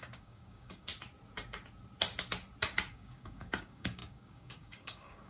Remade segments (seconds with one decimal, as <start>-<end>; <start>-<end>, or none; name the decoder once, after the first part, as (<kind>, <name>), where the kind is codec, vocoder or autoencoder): 0.0-0.9 (codec, DAC); 2.9-5.3